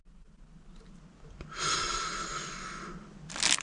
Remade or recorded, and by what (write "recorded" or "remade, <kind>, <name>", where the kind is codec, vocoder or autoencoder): recorded